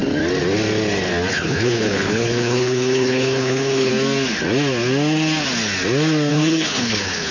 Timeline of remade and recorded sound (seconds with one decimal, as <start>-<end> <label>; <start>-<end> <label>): 0.0-1.3 recorded; 1.3-3.9 remade; 3.9-6.3 recorded; 6.3-7.3 remade